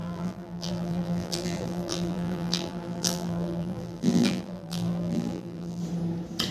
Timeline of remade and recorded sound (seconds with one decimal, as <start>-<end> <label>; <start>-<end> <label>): 0.0-5.8 remade; 5.8-6.5 recorded